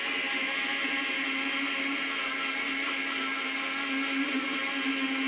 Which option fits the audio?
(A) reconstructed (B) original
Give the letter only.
B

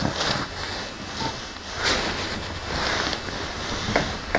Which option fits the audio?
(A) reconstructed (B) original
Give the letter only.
B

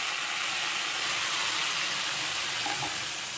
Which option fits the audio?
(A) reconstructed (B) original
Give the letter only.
B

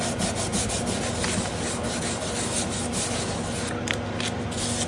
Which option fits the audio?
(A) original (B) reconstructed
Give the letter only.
A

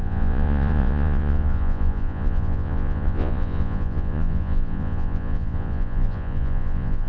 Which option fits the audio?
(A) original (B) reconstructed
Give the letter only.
B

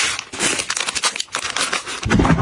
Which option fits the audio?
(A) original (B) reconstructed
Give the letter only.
A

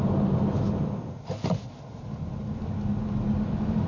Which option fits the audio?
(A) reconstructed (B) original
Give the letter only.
B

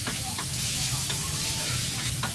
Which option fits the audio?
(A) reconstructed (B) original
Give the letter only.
A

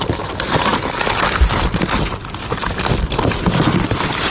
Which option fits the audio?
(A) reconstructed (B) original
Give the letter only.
B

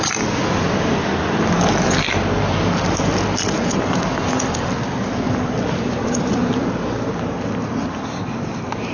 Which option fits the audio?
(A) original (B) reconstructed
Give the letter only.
A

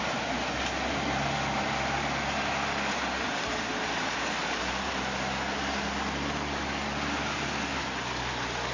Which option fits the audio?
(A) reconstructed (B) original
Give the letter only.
B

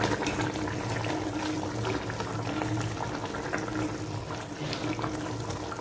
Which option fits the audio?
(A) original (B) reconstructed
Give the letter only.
A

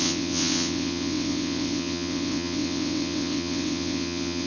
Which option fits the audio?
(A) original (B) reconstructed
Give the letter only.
B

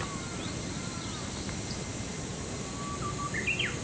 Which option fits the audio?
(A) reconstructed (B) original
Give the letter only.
B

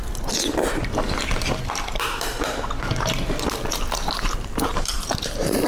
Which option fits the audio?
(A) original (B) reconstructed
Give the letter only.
B